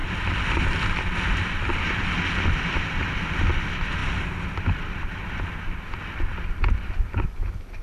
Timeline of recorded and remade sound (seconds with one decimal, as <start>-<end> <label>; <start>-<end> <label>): 0.0-7.8 recorded